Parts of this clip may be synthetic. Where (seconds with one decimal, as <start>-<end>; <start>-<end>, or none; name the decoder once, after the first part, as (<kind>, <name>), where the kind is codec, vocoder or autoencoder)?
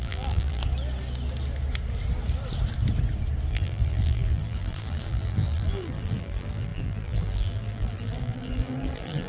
0.0-0.6 (vocoder, BigVGAN v2); 3.5-9.3